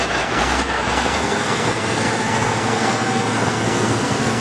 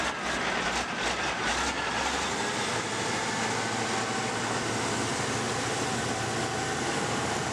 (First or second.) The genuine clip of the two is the second